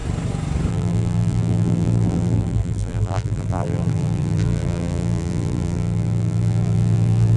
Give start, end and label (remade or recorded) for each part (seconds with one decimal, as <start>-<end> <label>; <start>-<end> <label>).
0.0-0.7 recorded; 0.7-7.4 remade